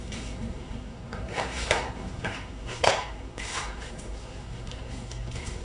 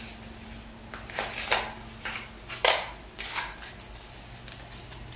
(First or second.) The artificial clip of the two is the first